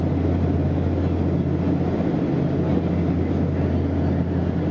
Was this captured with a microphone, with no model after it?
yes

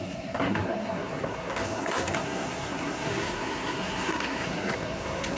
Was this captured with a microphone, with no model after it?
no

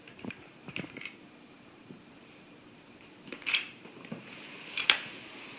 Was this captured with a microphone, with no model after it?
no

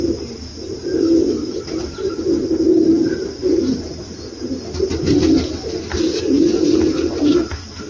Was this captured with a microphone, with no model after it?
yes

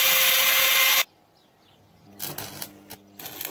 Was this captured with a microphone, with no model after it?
yes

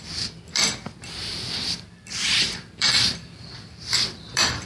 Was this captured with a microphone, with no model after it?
no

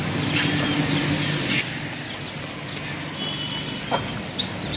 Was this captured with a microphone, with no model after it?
yes